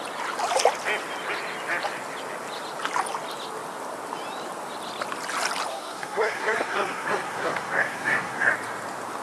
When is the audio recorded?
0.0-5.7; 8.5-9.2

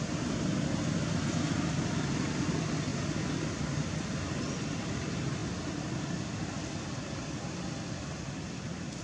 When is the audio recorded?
0.0-9.0

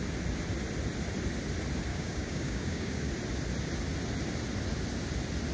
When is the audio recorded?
0.0-1.9; 3.1-5.5

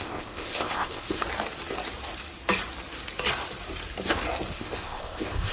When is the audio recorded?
1.2-4.5

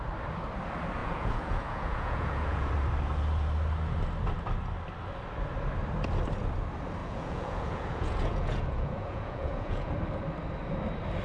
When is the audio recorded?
0.0-1.0; 2.7-7.0; 9.9-11.2

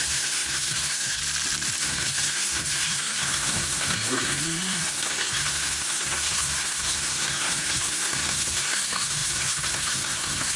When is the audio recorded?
1.2-1.8

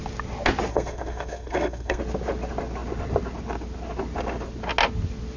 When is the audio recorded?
0.0-0.7; 2.0-5.4